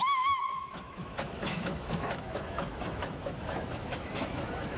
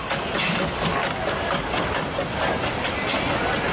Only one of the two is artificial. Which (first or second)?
first